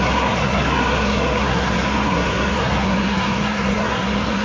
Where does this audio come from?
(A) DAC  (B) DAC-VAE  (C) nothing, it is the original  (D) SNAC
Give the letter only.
D